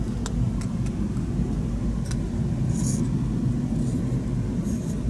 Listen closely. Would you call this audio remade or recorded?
recorded